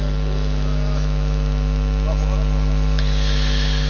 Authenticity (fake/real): real